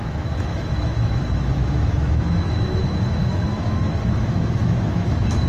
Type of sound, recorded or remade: remade